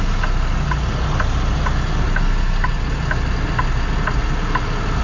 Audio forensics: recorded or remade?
recorded